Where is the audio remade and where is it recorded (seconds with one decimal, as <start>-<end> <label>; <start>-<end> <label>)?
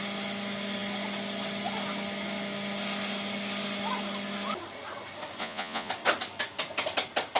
0.0-5.4 recorded; 5.4-5.9 remade; 5.9-7.4 recorded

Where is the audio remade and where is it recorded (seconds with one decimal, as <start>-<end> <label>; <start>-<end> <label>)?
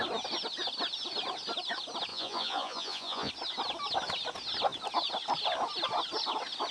0.0-2.1 recorded; 2.1-3.3 remade; 3.3-6.7 recorded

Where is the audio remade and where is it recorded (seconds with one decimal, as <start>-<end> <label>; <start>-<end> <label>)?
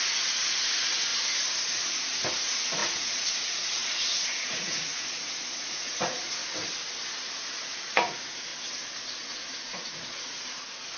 0.0-1.1 remade; 1.1-1.7 recorded; 1.7-6.4 remade; 6.4-7.0 recorded; 7.0-8.5 remade; 8.5-9.2 recorded; 9.2-11.0 remade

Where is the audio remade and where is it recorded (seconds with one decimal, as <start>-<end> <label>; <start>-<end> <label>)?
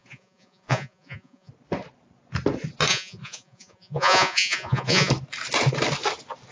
0.0-1.5 remade; 1.5-2.9 recorded; 2.9-5.1 remade; 5.1-6.5 recorded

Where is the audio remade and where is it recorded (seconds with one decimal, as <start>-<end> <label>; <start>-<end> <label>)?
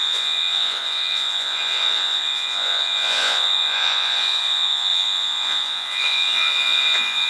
0.0-7.3 remade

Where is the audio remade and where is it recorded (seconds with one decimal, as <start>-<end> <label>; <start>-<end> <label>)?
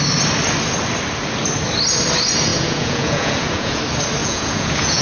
0.0-2.5 recorded; 2.5-3.8 remade; 3.8-4.2 recorded; 4.2-5.0 remade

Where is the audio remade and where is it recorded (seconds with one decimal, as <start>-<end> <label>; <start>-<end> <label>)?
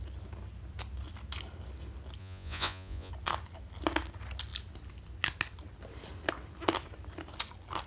0.0-2.2 recorded; 2.2-3.1 remade; 3.1-7.9 recorded